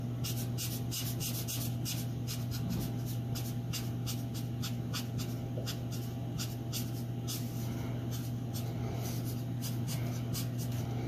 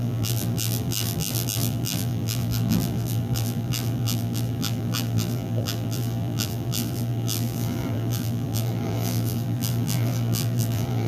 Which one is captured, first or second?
first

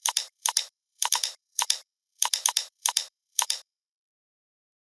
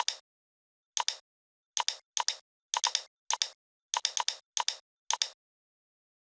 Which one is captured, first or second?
second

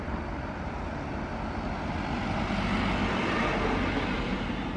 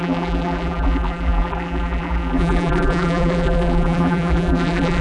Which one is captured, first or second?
first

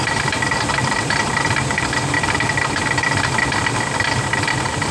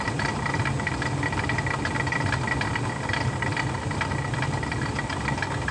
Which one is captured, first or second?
second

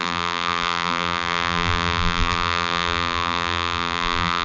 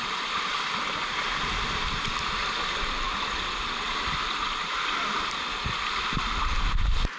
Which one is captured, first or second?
second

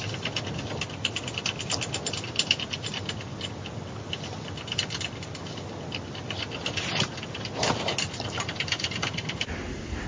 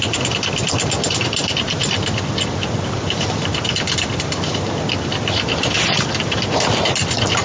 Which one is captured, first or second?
first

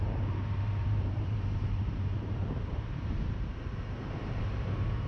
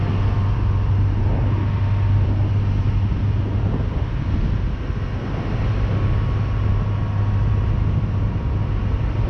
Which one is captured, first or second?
second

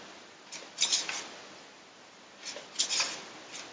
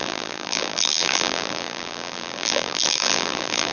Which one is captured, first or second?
first